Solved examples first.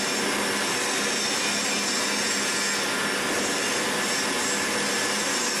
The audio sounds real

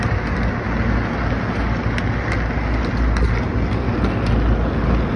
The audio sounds real